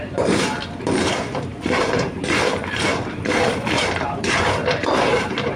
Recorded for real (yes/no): no